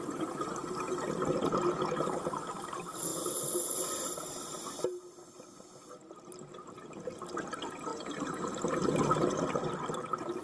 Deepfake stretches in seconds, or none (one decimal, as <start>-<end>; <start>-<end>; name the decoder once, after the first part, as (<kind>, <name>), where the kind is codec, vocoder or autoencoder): none